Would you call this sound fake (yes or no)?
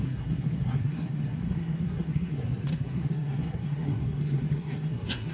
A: yes